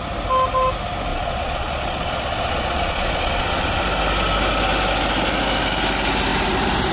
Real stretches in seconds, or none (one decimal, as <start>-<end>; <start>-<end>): 0.0-1.1; 3.8-6.9